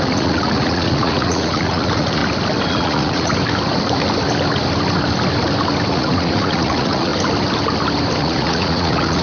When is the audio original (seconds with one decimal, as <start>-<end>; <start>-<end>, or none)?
2.2-2.7; 3.3-5.9; 7.1-8.2